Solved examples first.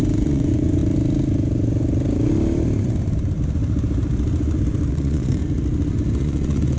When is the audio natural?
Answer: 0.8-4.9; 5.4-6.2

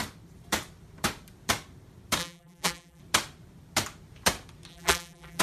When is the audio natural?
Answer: 0.0-2.2; 3.0-4.7